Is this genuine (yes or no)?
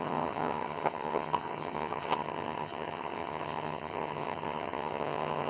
no